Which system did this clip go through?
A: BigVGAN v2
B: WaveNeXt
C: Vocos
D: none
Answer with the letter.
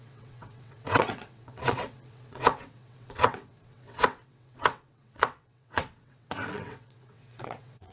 B